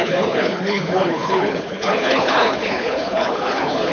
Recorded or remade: remade